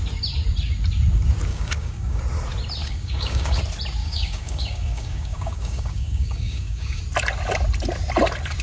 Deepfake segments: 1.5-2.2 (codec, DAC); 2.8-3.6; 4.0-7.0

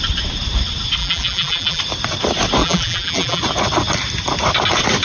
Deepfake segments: 1.0-1.8 (vocoder, BigVGAN v2); 2.6-3.4